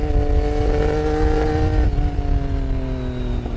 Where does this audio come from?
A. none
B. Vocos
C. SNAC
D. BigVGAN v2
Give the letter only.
A